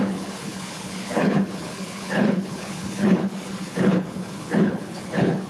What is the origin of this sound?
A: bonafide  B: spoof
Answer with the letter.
B